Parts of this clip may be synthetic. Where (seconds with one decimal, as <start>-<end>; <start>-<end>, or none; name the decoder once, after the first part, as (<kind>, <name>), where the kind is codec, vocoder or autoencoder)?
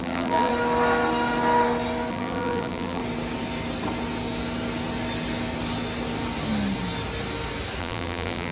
0.0-0.5 (vocoder, BigVGAN v2); 2.1-3.0; 7.8-8.5